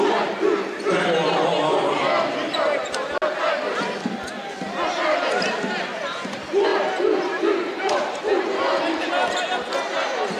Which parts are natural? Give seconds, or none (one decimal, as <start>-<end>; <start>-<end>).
0.0-10.4